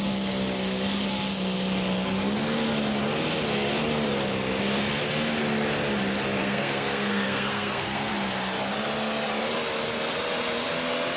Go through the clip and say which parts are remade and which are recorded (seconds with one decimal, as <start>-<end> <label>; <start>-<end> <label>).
0.0-6.4 recorded; 6.4-8.1 remade; 8.1-11.2 recorded